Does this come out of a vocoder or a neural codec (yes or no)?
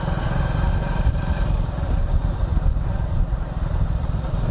no